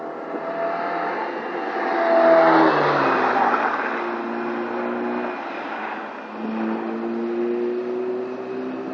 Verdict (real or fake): real